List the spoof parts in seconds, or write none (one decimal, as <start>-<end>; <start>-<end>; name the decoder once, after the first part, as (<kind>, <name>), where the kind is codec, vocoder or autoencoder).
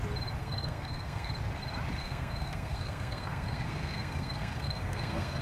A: 0.4-1.3 (codec, SNAC); 2.0-5.4